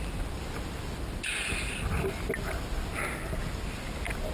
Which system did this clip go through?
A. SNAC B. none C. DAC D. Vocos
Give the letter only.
B